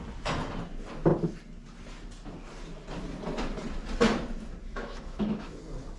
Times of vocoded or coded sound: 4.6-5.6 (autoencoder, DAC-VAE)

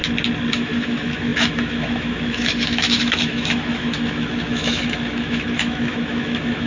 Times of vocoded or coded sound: 0.5-6.7 (autoencoder, DAC-VAE)